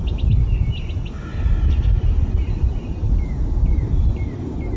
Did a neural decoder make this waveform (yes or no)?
no